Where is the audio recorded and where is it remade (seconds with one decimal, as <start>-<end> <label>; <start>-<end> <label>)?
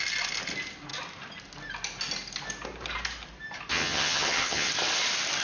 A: 0.0-3.7 recorded; 3.7-4.7 remade; 4.7-5.4 recorded